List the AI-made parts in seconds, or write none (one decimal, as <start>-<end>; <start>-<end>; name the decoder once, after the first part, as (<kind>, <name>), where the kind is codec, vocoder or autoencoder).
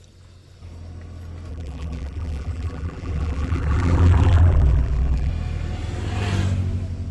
1.5-5.3 (vocoder, BigVGAN v2)